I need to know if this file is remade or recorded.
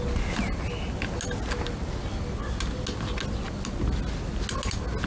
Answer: recorded